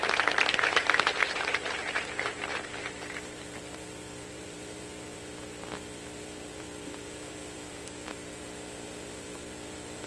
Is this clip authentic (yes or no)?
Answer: no